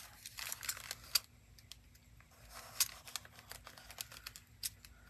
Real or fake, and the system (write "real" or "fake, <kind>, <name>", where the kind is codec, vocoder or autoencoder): real